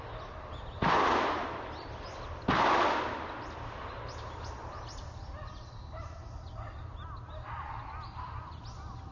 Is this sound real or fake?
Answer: real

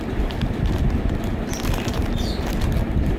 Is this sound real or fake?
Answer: fake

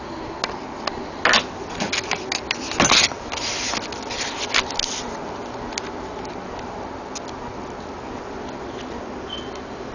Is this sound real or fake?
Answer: real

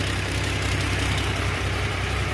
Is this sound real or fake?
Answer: fake